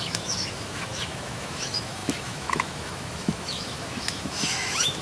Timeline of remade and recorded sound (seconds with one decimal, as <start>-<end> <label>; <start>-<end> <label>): 0.0-5.0 remade